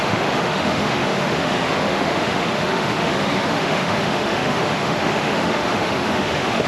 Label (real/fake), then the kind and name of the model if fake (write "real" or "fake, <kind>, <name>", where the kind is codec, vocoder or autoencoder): fake, autoencoder, DAC-VAE